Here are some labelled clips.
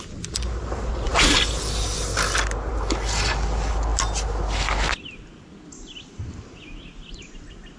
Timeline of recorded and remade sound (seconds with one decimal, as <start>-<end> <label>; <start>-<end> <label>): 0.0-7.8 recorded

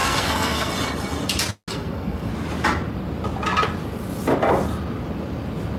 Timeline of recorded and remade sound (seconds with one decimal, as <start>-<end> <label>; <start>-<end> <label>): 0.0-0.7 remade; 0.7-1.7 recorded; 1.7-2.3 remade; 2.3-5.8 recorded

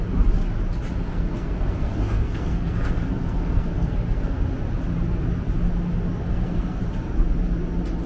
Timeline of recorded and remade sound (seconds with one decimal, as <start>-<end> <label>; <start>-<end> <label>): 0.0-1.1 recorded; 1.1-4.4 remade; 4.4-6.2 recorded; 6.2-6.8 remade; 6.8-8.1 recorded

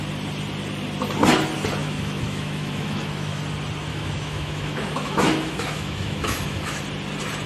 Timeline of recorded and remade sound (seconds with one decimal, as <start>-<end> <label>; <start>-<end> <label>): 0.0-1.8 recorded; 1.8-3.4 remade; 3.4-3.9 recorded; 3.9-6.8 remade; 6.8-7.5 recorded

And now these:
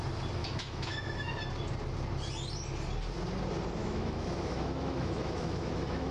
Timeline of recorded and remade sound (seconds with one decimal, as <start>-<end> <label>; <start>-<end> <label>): 0.0-0.4 recorded; 0.4-1.3 remade; 1.3-3.8 recorded; 3.8-6.1 remade

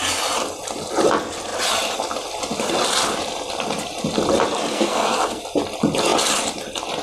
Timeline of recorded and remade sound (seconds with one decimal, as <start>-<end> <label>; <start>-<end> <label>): 0.0-4.7 recorded; 4.7-5.4 remade; 5.4-7.0 recorded